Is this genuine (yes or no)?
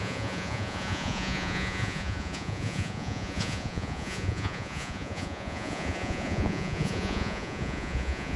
no